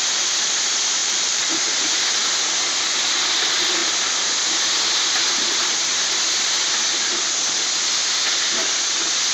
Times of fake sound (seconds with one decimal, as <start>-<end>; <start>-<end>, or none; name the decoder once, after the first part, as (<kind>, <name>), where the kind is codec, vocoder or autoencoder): 1.0-1.5 (vocoder, BigVGAN v2)

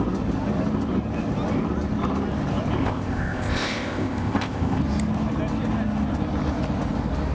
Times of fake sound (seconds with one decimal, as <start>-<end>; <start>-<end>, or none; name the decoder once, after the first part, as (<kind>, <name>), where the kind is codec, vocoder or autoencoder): 2.8-4.8 (codec, ZipCodec)